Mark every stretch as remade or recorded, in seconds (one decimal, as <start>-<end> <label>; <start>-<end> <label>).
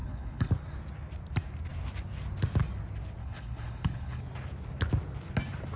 0.0-0.5 remade; 0.5-3.2 recorded; 3.2-4.2 remade; 4.2-5.8 recorded